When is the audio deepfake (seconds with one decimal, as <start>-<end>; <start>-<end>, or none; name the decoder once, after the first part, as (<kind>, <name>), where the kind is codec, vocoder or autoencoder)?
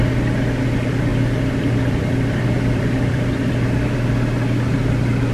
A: 1.1-3.5 (vocoder, BigVGAN v2)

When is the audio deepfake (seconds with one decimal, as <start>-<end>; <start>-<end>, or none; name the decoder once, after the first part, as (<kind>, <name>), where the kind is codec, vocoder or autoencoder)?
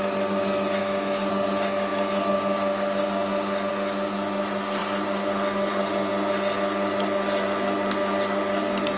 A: 0.8-1.3 (codec, DAC)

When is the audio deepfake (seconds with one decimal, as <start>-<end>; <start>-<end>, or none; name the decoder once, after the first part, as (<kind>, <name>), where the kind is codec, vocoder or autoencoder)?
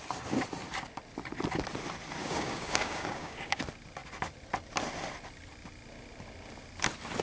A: 2.2-3.6 (codec, DAC)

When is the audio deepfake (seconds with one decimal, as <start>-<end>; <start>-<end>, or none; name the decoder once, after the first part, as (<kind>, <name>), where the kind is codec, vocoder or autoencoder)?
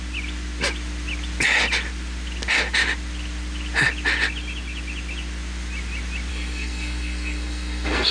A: 6.3-8.1 (codec, SNAC)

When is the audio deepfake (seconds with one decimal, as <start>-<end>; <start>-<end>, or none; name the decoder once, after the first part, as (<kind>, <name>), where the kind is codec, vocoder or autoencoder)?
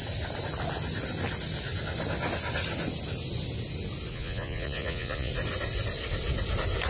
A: 4.1-5.3 (vocoder, Vocos)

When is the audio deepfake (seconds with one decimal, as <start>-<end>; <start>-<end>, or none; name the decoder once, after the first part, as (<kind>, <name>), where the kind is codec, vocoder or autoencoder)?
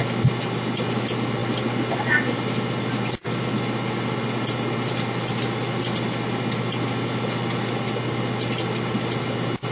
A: none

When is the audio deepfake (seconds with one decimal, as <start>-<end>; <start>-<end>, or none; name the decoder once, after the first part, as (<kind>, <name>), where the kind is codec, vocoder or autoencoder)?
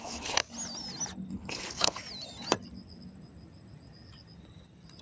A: 0.0-0.4 (codec, HILCodec); 1.3-2.0